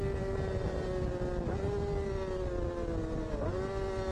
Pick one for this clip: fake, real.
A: real